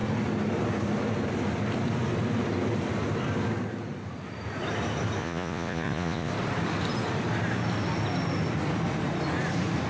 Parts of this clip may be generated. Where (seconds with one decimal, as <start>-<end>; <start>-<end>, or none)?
5.2-6.3